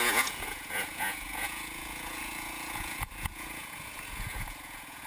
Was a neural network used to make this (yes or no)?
yes